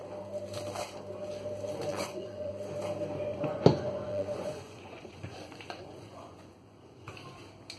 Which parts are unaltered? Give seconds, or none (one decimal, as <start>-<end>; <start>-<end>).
0.0-1.9; 2.5-3.3; 7.1-7.8